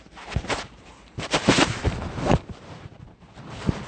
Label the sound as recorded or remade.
remade